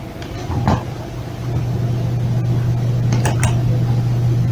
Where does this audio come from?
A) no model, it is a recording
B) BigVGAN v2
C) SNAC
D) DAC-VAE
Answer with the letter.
A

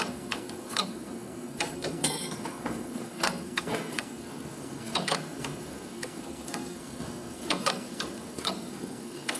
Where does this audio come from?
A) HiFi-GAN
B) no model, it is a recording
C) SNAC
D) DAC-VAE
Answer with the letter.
C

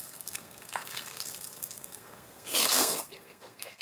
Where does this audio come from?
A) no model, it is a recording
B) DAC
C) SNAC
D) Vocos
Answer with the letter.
C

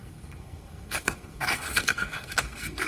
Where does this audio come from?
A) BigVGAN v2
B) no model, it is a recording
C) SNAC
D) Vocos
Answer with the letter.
C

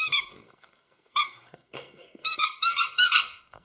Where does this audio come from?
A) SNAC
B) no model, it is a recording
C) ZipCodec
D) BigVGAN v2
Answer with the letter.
A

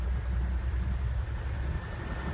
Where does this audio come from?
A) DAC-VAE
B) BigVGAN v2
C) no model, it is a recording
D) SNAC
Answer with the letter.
C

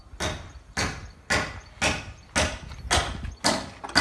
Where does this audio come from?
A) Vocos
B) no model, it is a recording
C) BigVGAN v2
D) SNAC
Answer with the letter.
B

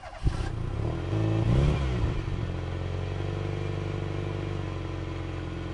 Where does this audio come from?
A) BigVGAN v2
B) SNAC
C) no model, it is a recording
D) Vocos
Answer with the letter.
C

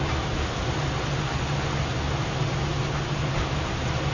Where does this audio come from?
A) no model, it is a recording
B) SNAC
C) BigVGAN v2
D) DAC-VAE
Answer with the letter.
A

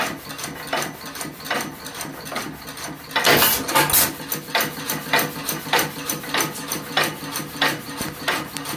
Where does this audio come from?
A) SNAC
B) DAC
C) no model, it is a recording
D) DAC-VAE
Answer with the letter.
C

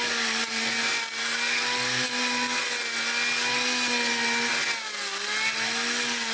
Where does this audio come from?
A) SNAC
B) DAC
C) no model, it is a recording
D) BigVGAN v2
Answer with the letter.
C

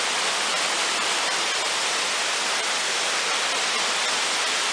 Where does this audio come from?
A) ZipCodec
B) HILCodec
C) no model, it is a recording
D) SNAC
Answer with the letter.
C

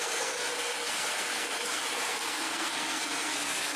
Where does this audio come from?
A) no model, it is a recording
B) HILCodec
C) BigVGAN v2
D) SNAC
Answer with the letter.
D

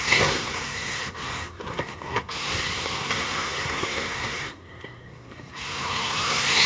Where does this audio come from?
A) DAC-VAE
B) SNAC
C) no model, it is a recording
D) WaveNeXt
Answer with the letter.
B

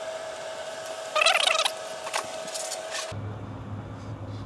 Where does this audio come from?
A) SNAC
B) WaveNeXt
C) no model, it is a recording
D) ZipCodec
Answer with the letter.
C